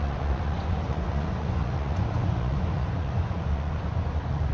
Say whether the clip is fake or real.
fake